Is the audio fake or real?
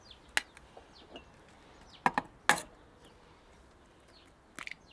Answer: real